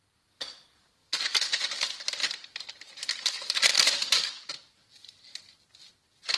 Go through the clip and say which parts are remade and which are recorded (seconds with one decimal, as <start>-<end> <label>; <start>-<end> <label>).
0.0-1.0 recorded; 1.0-3.0 remade; 3.0-3.7 recorded; 3.7-5.2 remade; 5.2-6.4 recorded

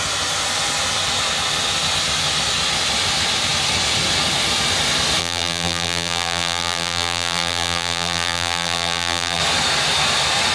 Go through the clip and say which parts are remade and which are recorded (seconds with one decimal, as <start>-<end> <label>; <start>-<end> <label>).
0.0-5.2 recorded; 5.2-9.4 remade; 9.4-10.5 recorded